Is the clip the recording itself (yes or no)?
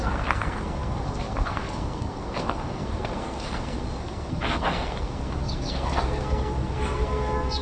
no